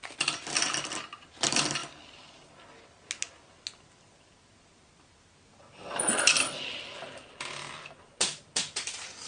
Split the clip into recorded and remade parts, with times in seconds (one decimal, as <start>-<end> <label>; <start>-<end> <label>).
0.0-9.3 recorded